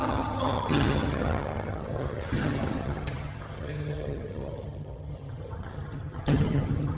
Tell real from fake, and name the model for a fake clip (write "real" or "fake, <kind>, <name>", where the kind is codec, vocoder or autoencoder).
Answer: fake, vocoder, HiFi-GAN